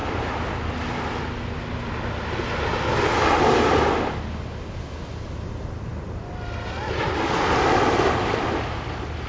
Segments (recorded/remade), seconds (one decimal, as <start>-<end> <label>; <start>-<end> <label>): 0.0-9.3 recorded

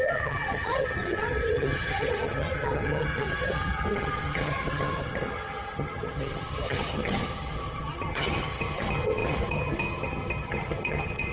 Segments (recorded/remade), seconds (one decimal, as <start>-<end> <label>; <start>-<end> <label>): 0.0-11.3 remade

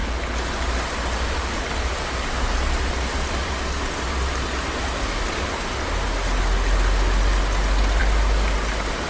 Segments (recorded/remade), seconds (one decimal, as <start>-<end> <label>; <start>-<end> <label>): 0.0-9.1 recorded

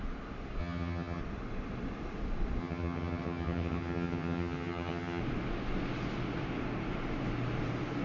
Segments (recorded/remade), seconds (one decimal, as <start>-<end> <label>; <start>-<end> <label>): 0.0-0.6 recorded; 0.6-1.2 remade; 1.2-2.6 recorded; 2.6-5.2 remade; 5.2-8.0 recorded

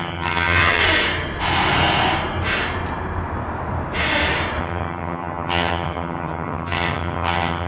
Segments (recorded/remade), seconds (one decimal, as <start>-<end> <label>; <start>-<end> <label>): 0.0-0.8 remade; 0.8-4.6 recorded; 4.6-7.7 remade